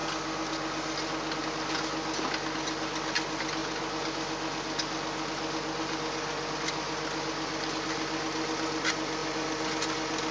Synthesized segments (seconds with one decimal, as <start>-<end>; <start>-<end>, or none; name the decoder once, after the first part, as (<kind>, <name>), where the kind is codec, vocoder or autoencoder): none